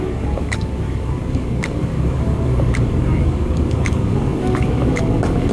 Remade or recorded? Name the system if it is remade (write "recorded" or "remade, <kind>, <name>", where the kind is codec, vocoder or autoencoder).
remade, codec, DAC